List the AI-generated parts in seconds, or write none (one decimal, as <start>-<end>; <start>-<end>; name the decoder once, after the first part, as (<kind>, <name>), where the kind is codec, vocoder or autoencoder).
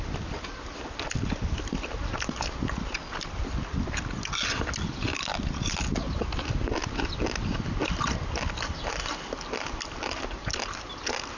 none